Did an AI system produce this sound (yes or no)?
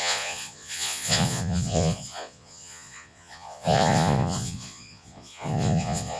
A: yes